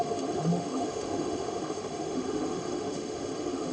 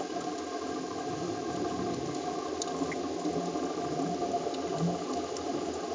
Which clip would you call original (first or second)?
second